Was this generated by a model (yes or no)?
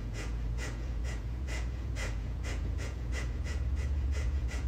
yes